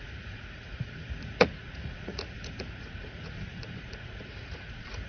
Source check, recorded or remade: remade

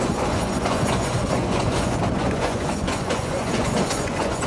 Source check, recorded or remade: remade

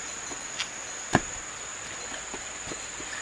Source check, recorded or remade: recorded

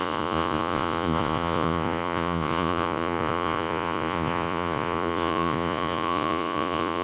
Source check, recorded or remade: remade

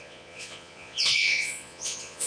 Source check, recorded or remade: remade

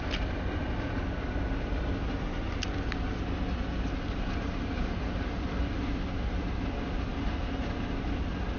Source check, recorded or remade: recorded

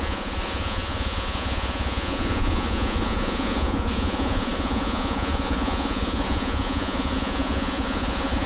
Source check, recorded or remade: remade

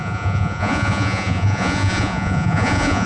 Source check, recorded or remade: remade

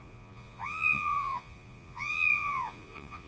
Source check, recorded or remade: remade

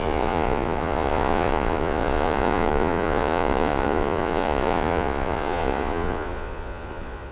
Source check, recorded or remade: remade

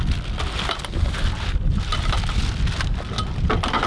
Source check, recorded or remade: recorded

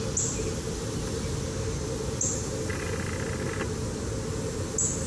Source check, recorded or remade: recorded